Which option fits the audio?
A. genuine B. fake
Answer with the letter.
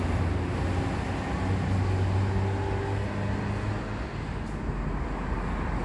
A